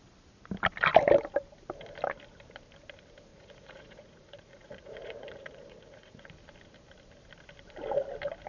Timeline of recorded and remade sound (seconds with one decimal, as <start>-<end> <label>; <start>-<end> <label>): 0.0-3.3 recorded; 3.3-6.3 remade; 6.3-8.5 recorded